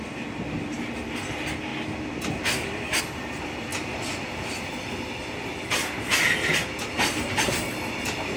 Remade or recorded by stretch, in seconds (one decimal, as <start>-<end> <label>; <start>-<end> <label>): 0.0-8.4 recorded